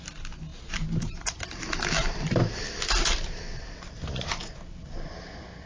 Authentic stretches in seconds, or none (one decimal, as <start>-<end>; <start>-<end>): 0.0-5.7